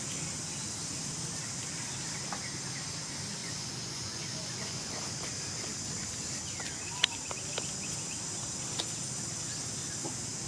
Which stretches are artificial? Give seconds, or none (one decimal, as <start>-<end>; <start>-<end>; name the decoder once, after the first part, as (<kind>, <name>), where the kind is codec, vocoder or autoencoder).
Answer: 3.4-4.9 (vocoder, Vocos)